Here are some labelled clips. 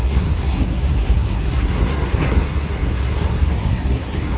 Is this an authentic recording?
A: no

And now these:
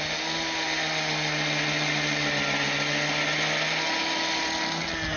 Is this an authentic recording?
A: yes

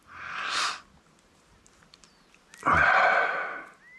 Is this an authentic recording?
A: yes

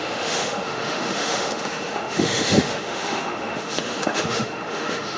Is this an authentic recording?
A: no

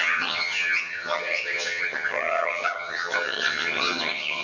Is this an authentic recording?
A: no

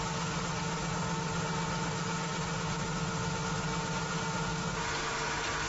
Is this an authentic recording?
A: yes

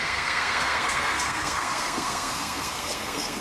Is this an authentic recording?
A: no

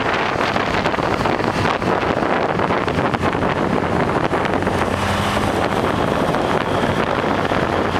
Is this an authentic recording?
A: yes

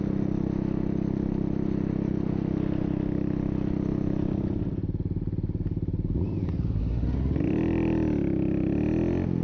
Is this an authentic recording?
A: yes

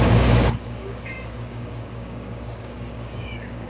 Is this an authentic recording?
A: no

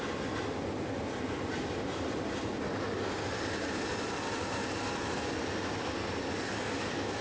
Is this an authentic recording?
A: yes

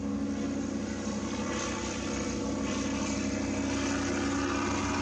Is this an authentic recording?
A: yes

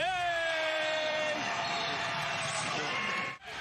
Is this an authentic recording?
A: no